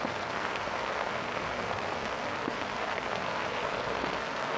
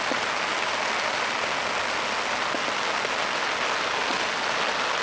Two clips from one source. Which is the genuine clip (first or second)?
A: second